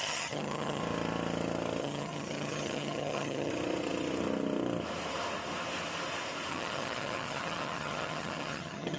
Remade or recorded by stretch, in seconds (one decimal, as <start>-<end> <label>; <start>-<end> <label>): 0.0-0.8 remade; 0.8-1.8 recorded; 1.8-3.5 remade; 3.5-6.5 recorded; 6.5-9.0 remade